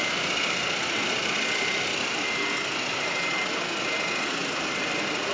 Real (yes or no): yes